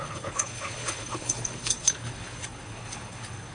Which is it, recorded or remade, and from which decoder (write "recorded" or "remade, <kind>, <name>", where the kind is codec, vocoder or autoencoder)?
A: remade, codec, HILCodec